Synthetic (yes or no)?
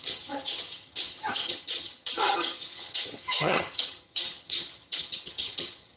yes